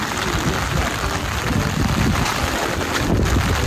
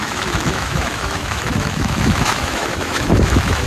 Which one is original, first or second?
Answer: first